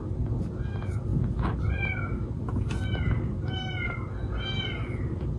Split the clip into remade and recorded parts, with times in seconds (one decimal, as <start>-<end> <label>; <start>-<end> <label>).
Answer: 0.0-5.4 recorded